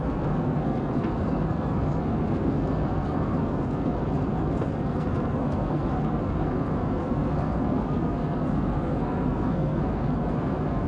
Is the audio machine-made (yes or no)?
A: yes